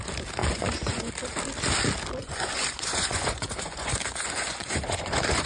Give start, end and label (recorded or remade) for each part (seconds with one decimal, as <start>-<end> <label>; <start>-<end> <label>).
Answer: 0.0-0.4 recorded; 0.4-1.1 remade; 1.1-2.2 recorded; 2.2-5.5 remade